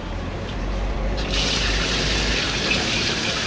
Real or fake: fake